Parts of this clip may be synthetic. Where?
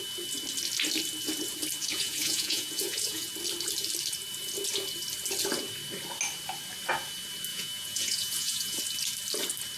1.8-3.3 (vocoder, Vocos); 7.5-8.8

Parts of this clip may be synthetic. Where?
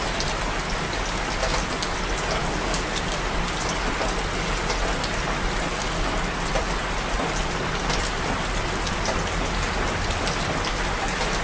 none